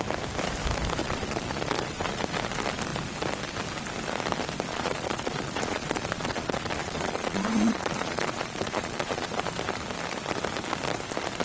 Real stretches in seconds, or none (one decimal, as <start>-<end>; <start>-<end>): 0.0-1.0; 2.2-4.7; 9.5-11.4